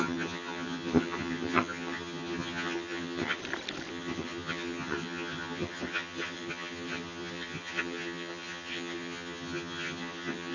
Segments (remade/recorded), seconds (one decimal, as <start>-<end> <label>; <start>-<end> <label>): 0.0-3.4 remade; 3.4-3.9 recorded; 3.9-10.5 remade